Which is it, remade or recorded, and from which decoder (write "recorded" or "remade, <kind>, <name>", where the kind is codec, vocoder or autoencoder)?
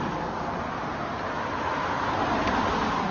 recorded